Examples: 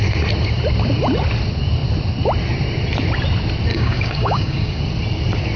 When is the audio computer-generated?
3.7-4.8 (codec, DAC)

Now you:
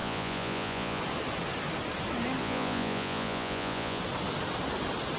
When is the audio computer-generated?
0.0-1.0 (vocoder, Vocos); 2.4-4.0

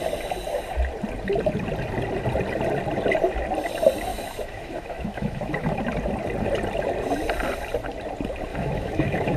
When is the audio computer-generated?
4.1-5.8 (autoencoder, DAC-VAE); 8.5-9.4